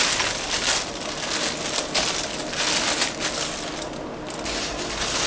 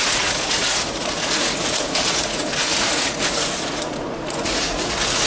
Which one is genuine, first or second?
first